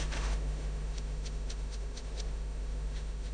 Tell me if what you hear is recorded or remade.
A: remade